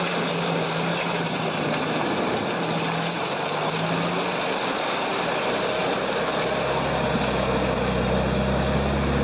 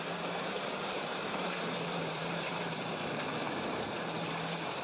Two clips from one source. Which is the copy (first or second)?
second